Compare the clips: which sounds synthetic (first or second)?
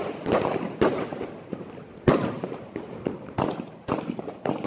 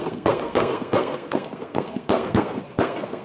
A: second